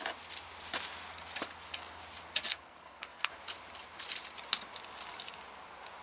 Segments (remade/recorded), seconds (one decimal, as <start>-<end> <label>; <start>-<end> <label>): 0.0-2.5 recorded; 2.5-3.3 remade; 3.3-6.0 recorded